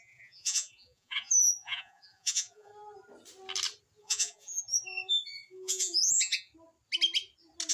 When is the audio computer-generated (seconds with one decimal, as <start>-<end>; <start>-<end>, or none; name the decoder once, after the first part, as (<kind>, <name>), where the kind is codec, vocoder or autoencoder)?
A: 0.0-2.7 (vocoder, Vocos); 4.0-6.5